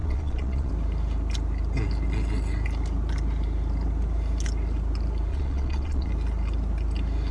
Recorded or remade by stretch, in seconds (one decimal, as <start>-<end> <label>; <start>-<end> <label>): 0.0-0.7 remade; 0.7-5.3 recorded; 5.3-6.1 remade; 6.1-7.3 recorded